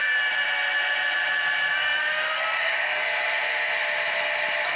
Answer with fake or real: real